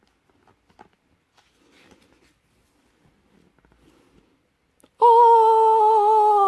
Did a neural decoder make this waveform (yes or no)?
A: no